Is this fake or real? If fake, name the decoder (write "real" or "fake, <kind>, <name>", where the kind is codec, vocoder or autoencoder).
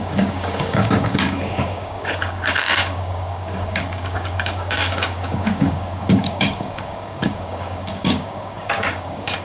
fake, codec, DAC